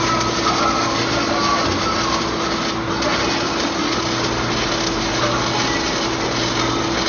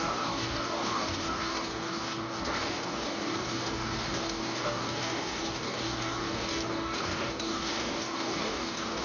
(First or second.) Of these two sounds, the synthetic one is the second